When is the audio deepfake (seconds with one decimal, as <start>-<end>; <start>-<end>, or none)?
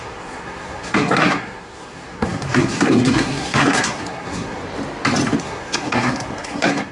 0.0-4.6; 5.4-6.9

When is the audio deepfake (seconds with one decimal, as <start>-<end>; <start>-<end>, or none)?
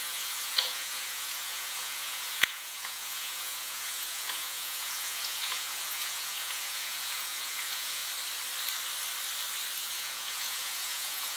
0.0-8.0; 9.8-11.4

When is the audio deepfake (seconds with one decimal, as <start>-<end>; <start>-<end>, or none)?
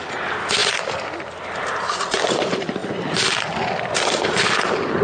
none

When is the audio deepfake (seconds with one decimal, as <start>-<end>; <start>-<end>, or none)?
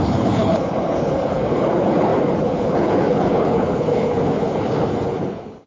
0.0-5.7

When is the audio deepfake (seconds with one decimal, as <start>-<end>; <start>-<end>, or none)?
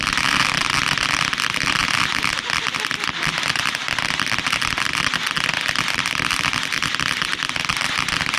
none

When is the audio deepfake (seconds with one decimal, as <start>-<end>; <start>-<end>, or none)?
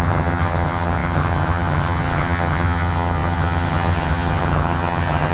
0.0-5.3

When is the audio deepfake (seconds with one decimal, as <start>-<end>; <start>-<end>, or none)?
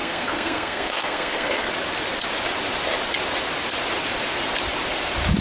0.0-1.7